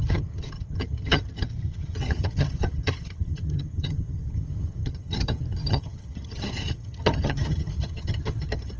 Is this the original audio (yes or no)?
no